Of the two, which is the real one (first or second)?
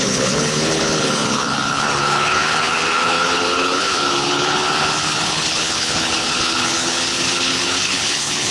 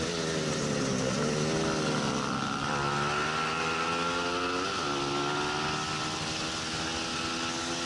second